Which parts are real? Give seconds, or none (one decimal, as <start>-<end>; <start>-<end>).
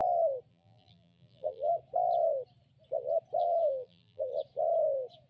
0.0-0.5; 1.8-3.4; 4.3-5.3